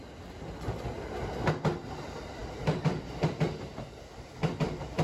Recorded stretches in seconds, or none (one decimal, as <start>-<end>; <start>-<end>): 0.0-5.0